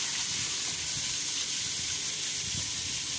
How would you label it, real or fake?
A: real